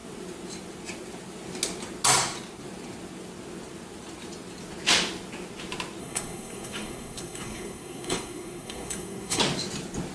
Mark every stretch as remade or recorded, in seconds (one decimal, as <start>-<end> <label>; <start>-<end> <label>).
0.0-6.0 recorded; 6.0-9.4 remade; 9.4-10.1 recorded